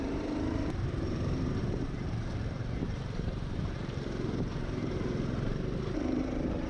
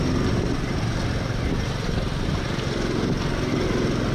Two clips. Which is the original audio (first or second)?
second